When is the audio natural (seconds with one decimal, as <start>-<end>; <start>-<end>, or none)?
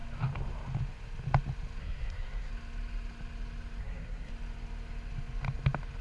0.0-1.8; 2.5-3.8; 4.3-6.0